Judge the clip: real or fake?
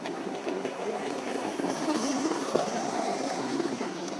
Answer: fake